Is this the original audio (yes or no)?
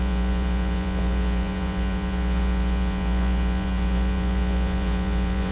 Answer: no